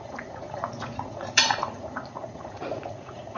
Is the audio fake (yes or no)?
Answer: yes